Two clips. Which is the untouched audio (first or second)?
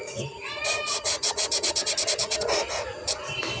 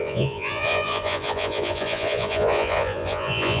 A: first